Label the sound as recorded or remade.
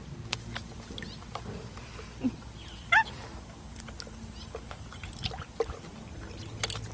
recorded